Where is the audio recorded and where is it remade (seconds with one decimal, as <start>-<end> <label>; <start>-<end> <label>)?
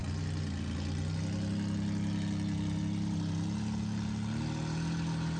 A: 0.0-5.4 recorded